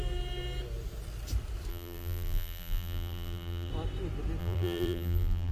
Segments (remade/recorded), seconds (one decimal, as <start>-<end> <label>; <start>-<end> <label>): 0.0-1.7 recorded; 1.7-3.7 remade; 3.7-4.4 recorded; 4.4-5.5 remade